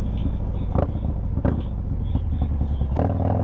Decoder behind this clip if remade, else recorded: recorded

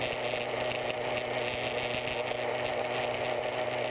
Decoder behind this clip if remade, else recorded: recorded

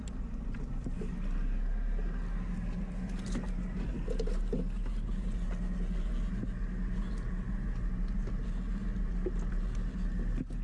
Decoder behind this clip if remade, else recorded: recorded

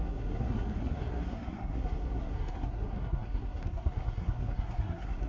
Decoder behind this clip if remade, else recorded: remade, codec, SNAC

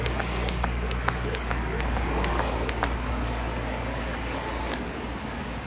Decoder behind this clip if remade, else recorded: remade, codec, DAC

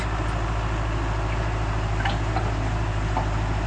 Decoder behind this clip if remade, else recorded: recorded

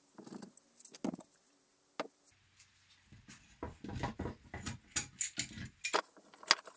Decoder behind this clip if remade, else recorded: recorded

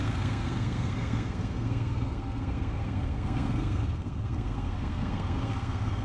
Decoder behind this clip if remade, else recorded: remade, codec, SNAC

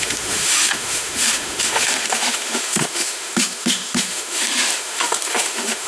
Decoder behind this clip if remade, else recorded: remade, autoencoder, DAC-VAE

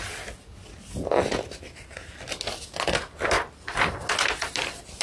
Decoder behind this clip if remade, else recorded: recorded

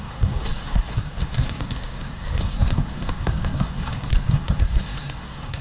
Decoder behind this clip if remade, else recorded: remade, codec, SNAC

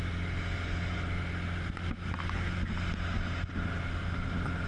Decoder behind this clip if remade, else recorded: recorded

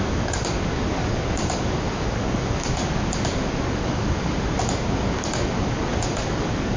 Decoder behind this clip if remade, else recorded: remade, codec, DAC